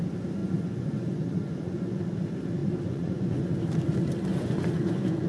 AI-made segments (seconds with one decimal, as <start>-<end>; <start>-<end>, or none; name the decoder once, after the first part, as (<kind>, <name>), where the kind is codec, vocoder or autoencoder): 0.4-2.0 (vocoder, Vocos); 2.6-3.6; 4.3-5.3